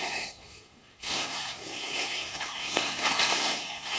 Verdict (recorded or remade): remade